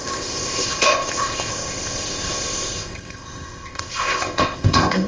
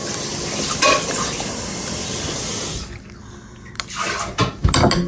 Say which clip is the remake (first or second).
first